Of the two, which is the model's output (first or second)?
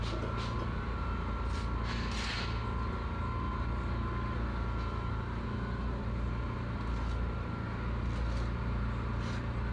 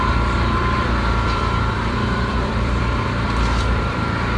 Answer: second